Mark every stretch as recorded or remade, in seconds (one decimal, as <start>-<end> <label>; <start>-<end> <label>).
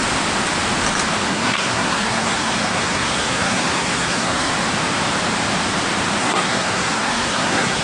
0.0-1.3 recorded; 1.3-4.5 remade; 4.5-6.2 recorded; 6.2-7.8 remade